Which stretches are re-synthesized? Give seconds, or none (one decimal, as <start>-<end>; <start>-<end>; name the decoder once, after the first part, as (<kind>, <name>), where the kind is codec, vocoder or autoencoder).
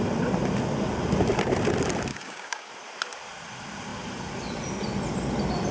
2.1-2.7 (codec, DAC)